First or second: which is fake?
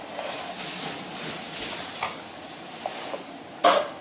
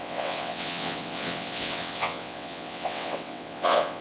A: second